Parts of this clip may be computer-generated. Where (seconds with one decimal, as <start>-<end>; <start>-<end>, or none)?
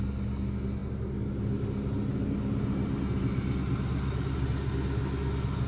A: none